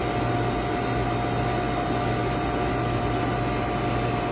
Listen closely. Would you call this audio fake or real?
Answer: real